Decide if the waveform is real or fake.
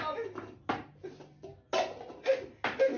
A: real